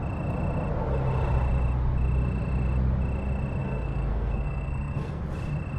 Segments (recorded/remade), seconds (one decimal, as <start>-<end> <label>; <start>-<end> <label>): 0.0-3.6 recorded; 3.6-5.2 remade; 5.2-5.8 recorded